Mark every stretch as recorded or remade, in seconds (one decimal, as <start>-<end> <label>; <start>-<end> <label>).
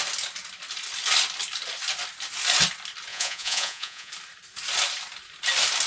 0.0-3.1 recorded; 3.1-4.1 remade; 4.1-5.9 recorded